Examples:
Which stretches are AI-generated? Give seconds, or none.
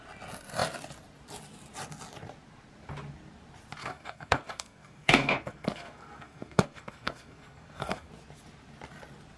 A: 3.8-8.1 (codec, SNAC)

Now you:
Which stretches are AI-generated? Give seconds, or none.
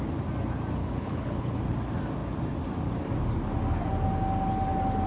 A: 0.8-1.6 (codec, HILCodec)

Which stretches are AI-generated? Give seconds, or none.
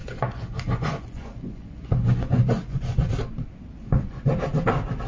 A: 0.0-3.1 (vocoder, Vocos); 3.8-4.3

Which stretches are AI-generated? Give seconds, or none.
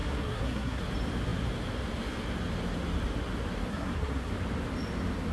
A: 0.0-0.8 (codec, SNAC); 3.7-4.3